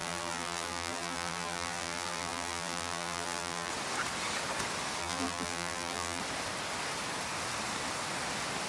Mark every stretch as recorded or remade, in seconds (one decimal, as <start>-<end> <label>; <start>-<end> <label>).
0.0-3.7 remade; 3.7-5.0 recorded; 5.0-6.2 remade; 6.2-8.7 recorded